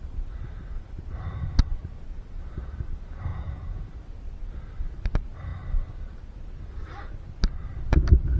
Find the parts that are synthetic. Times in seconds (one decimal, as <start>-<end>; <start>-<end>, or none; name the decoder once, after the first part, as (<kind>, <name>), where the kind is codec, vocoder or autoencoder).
3.3-3.8 (vocoder, Vocos)

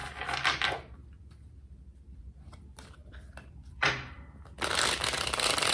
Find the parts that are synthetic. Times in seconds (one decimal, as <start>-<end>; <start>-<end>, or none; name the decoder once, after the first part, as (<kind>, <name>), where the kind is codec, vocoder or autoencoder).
2.2-5.7 (vocoder, BigVGAN v2)

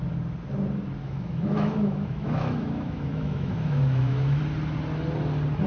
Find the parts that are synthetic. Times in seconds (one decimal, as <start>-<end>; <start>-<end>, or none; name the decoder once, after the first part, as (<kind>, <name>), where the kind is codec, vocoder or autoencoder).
1.0-4.4 (autoencoder, DAC-VAE)

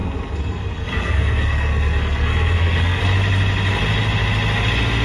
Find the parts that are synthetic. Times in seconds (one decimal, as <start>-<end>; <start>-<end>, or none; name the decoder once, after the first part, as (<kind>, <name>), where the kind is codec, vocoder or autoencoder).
0.0-3.0 (codec, SNAC)

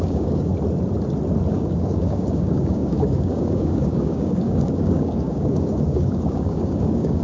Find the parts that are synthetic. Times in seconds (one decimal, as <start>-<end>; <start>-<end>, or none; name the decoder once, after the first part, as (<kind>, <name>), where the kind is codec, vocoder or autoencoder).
0.0-0.5 (codec, DAC); 1.5-7.2

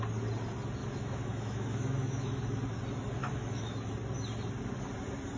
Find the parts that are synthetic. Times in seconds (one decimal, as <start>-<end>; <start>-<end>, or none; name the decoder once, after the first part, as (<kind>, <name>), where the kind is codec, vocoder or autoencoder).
0.8-2.4 (autoencoder, DAC-VAE); 3.2-3.9